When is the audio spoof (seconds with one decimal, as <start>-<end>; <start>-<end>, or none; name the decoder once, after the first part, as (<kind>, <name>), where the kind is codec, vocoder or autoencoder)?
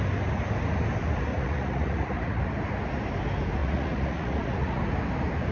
1.3-2.4 (vocoder, Vocos); 3.6-4.8